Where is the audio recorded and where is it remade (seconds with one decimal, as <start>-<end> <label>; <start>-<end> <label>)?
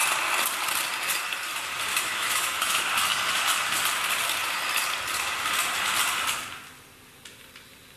0.0-1.9 recorded; 1.9-2.9 remade; 2.9-8.0 recorded